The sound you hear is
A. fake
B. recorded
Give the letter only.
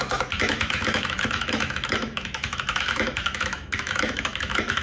A